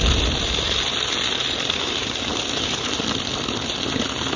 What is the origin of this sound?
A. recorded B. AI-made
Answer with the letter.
A